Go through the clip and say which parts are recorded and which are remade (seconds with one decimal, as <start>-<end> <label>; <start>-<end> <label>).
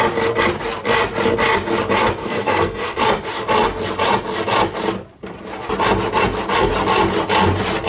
0.0-2.2 recorded; 2.2-3.0 remade; 3.0-7.9 recorded